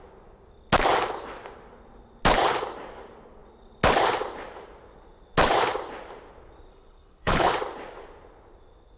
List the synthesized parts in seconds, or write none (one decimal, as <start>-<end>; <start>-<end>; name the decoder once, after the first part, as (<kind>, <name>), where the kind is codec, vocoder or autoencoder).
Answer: 6.7-7.5 (codec, HILCodec)